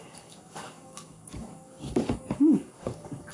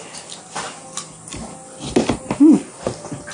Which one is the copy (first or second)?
first